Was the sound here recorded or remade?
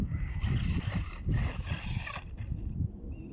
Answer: recorded